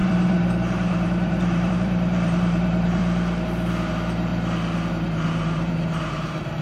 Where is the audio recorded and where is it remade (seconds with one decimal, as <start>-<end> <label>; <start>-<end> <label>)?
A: 0.0-3.0 remade; 3.0-3.9 recorded; 3.9-4.3 remade; 4.3-4.9 recorded; 4.9-6.6 remade